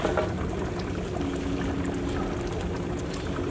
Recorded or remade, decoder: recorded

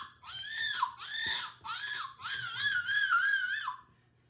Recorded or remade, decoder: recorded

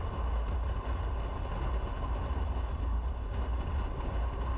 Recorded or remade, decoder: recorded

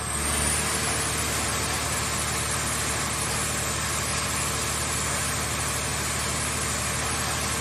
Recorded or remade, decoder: recorded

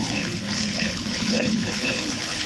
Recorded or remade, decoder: remade, codec, HILCodec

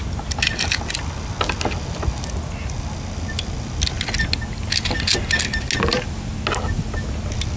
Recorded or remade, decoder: recorded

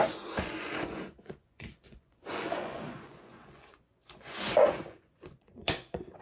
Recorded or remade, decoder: remade, vocoder, Vocos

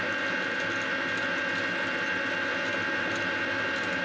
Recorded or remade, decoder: recorded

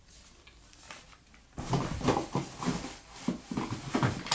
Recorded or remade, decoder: recorded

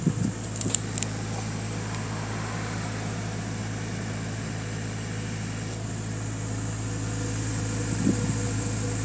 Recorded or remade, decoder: recorded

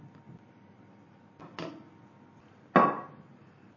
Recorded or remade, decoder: recorded